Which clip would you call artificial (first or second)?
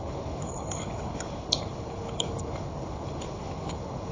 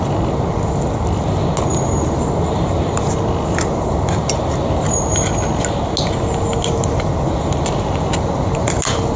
first